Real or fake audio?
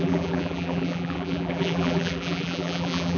fake